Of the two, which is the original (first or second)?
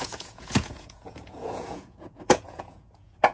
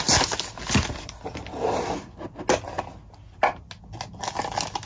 second